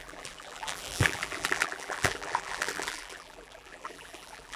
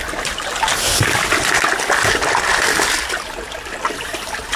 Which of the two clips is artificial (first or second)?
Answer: first